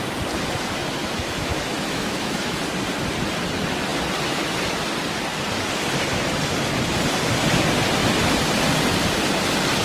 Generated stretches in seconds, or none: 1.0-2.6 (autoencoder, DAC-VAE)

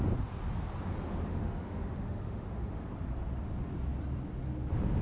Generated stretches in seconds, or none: 1.3-2.8 (autoencoder, DAC-VAE)

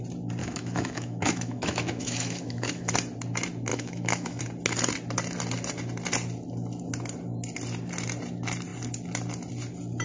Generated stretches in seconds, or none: 0.4-2.9 (autoencoder, DAC-VAE); 3.7-4.4

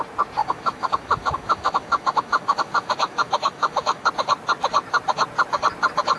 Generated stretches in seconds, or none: 0.4-4.1 (autoencoder, DAC-VAE)

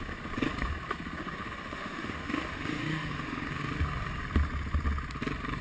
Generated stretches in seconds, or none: 1.2-3.7 (autoencoder, DAC-VAE)